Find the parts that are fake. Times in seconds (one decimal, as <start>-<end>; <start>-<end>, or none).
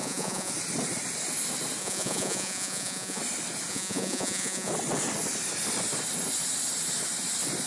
0.0-0.5; 1.8-3.2; 3.7-4.7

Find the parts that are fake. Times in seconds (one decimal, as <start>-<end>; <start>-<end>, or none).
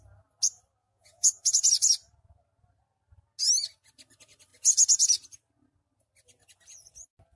0.8-1.5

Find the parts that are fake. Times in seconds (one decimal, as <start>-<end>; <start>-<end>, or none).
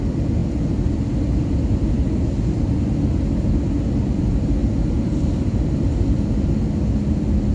4.6-6.0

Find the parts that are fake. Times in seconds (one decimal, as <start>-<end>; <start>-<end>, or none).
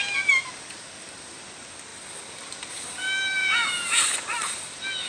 3.4-4.0